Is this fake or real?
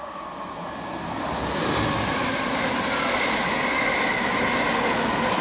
real